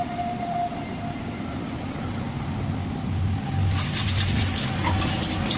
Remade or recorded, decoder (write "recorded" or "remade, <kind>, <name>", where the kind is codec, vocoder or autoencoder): recorded